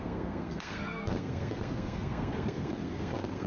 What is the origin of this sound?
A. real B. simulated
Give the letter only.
B